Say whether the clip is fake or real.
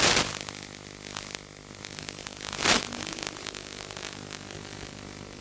fake